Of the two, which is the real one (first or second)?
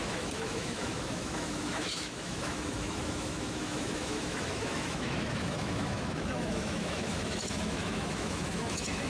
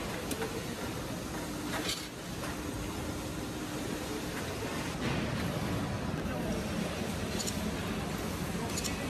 second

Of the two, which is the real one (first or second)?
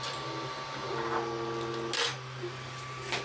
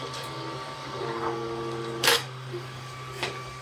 first